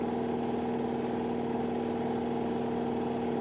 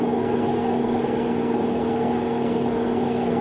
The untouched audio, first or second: first